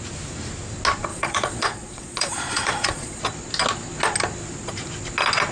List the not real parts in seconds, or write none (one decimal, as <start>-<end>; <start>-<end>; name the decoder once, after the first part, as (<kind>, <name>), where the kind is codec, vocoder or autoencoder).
1.1-3.2 (vocoder, Vocos)